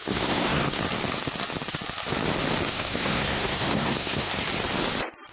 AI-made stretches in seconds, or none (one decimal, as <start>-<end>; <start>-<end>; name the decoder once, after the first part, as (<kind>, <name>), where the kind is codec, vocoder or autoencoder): 0.0-0.8 (codec, SNAC); 2.7-4.3